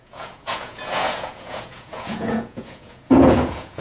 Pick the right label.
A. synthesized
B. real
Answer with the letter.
A